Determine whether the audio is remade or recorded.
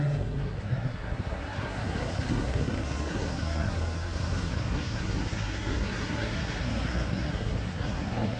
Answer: remade